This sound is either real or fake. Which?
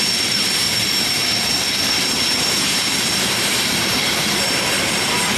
fake